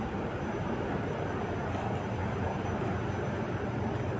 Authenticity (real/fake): real